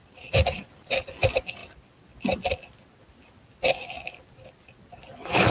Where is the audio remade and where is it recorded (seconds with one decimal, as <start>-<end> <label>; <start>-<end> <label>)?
0.0-5.5 recorded